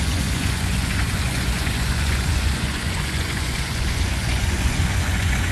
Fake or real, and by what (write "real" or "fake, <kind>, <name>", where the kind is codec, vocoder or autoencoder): fake, vocoder, Vocos